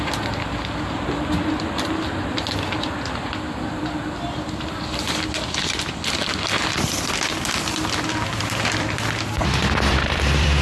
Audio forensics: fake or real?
fake